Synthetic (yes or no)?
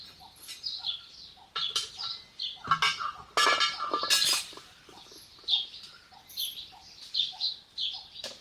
no